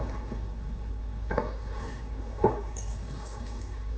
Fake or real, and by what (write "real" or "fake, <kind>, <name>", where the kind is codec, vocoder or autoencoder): fake, codec, SNAC